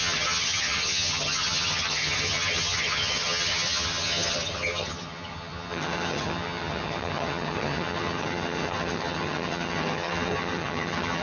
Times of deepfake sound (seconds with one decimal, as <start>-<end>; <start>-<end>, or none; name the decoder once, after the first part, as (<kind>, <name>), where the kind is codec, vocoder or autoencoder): 0.0-11.2 (vocoder, HiFi-GAN)